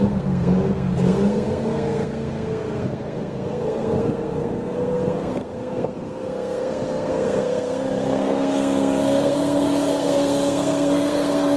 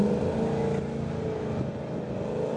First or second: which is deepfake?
first